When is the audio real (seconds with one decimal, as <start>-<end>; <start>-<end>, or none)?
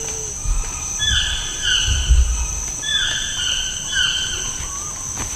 0.0-0.4; 1.1-2.9; 4.7-5.4